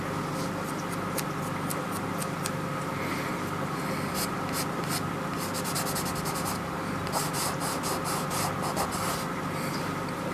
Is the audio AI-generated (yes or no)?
no